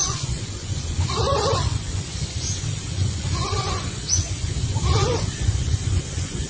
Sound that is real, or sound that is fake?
fake